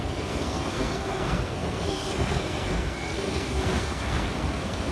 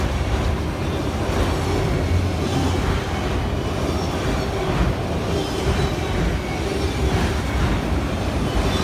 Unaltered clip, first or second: second